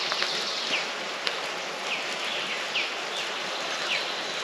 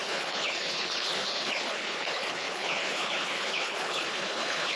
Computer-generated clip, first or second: second